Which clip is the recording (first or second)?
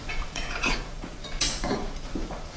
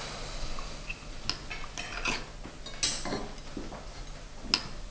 second